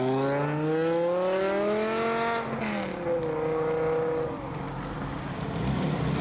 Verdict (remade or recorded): recorded